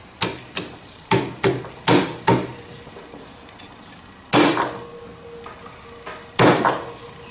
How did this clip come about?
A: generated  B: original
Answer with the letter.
B